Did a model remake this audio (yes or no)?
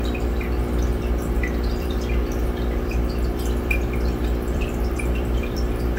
yes